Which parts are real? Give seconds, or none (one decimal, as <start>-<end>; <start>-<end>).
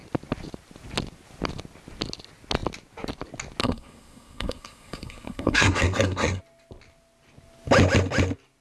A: 0.0-3.6; 6.4-8.6